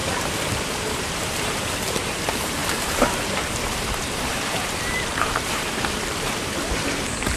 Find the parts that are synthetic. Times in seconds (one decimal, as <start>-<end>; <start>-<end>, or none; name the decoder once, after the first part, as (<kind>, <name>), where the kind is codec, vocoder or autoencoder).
0.0-7.4 (vocoder, BigVGAN v2)